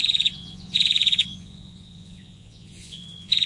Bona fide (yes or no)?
no